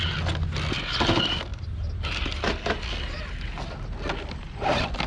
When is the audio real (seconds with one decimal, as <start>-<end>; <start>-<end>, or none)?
0.0-5.1